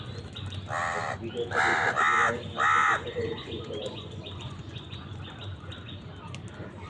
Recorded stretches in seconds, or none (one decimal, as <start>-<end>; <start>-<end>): 0.0-2.8; 5.7-6.9